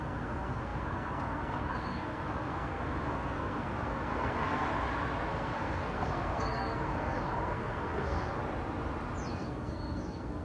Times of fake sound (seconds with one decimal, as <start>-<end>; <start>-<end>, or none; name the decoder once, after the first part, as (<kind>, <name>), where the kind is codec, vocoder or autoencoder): 0.0-4.7 (codec, SNAC); 5.3-8.4; 9.3-10.4